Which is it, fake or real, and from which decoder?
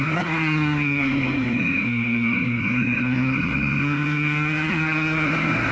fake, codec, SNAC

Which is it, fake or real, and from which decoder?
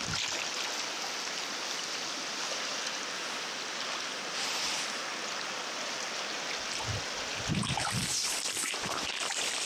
real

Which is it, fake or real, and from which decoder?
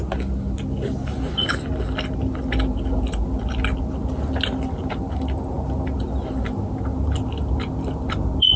real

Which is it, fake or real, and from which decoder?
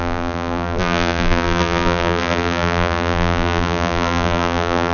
fake, vocoder, BigVGAN v2